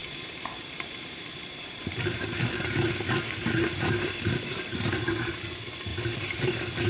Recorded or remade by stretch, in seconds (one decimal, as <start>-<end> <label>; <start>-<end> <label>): 0.0-2.9 remade; 2.9-3.4 recorded; 3.4-5.2 remade; 5.2-5.9 recorded; 5.9-6.9 remade